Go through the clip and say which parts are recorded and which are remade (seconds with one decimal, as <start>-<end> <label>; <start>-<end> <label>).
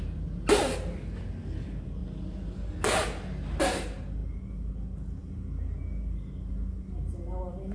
0.0-7.7 recorded